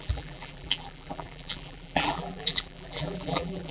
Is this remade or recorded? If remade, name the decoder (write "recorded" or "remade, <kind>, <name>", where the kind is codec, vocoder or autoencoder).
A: remade, vocoder, BigVGAN v2